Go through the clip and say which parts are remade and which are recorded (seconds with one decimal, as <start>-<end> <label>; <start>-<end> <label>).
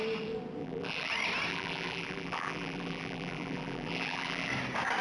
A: 0.0-0.6 recorded; 0.6-1.1 remade; 1.1-1.5 recorded; 1.5-4.5 remade; 4.5-5.0 recorded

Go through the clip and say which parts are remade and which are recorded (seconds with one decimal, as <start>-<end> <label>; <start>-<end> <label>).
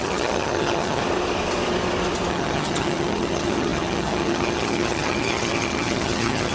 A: 0.0-1.0 remade; 1.0-2.3 recorded; 2.3-6.5 remade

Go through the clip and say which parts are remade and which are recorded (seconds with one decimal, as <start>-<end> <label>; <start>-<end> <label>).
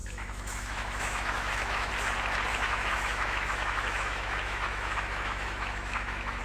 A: 0.0-1.9 remade; 1.9-2.5 recorded; 2.5-6.4 remade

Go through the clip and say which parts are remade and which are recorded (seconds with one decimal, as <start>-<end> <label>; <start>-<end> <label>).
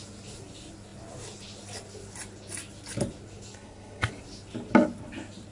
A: 0.0-3.5 recorded; 3.5-4.1 remade; 4.1-5.5 recorded